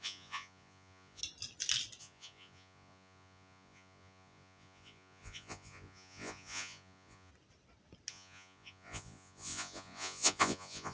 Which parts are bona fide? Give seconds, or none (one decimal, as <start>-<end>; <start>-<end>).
1.2-2.0; 7.3-8.1